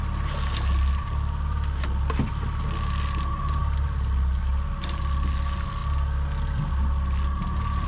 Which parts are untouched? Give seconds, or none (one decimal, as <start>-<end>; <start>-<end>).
0.0-7.9